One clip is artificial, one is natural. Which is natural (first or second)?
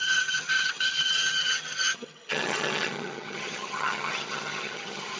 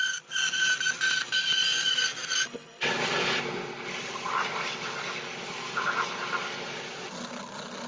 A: second